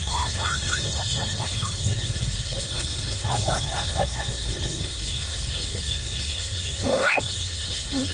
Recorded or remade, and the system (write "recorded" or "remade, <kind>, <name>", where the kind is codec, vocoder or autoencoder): remade, codec, SNAC